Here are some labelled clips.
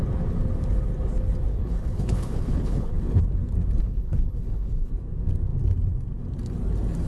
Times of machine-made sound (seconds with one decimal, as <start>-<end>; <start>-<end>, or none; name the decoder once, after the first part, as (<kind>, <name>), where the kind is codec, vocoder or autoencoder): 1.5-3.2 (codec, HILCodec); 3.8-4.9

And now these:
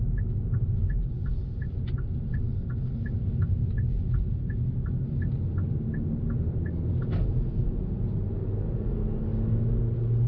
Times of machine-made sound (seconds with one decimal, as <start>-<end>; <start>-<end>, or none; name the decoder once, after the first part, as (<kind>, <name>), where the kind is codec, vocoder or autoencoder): none

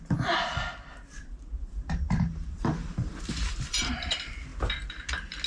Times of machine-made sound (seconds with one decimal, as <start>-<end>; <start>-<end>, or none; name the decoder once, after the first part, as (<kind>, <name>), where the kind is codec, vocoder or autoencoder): 1.6-4.1 (vocoder, BigVGAN v2)

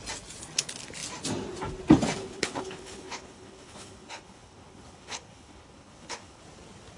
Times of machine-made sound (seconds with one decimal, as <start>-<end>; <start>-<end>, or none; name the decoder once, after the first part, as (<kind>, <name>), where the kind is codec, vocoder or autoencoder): 2.2-6.4 (codec, HILCodec)

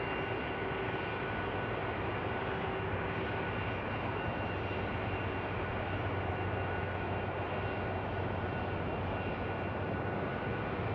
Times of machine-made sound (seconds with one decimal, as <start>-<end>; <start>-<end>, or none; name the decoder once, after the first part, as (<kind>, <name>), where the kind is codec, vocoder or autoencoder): none

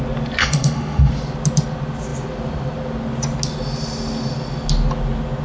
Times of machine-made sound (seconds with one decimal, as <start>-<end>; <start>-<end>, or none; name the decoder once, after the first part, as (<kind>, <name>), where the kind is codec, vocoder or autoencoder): 0.4-1.1 (autoencoder, DAC-VAE)

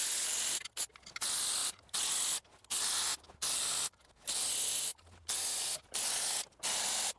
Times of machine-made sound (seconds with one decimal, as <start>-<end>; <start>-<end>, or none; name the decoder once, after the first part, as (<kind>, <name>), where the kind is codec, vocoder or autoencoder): none

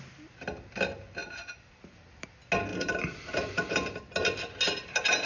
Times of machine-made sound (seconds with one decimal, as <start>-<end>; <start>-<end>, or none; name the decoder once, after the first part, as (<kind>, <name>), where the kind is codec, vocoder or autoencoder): 1.2-1.8 (vocoder, BigVGAN v2); 2.7-4.0